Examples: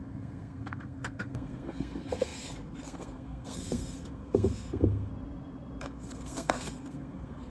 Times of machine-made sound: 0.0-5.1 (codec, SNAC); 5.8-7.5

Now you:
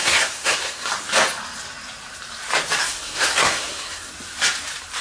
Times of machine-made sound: 0.0-0.9 (codec, SNAC); 2.8-4.1